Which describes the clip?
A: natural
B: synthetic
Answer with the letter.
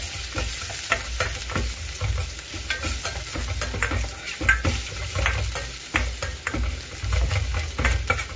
A